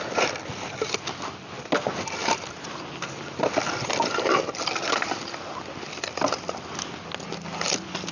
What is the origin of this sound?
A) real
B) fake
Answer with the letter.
A